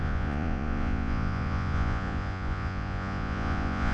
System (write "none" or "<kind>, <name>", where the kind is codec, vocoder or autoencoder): vocoder, Vocos